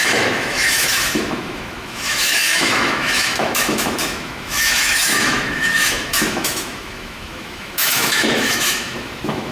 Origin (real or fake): fake